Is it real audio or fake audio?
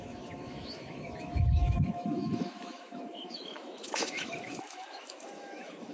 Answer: fake